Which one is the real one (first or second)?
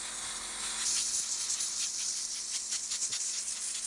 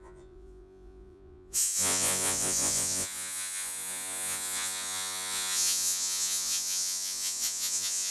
first